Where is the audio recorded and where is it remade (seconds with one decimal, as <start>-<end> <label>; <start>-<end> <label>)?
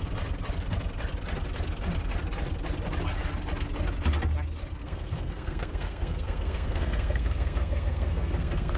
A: 0.0-4.8 recorded; 4.8-8.8 remade